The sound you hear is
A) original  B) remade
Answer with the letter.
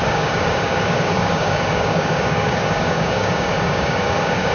B